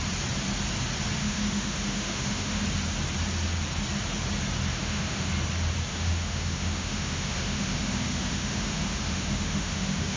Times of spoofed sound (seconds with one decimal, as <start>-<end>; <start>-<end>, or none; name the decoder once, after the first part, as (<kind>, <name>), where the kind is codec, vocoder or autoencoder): 1.2-2.6 (autoencoder, DAC-VAE); 4.7-5.3; 5.9-10.2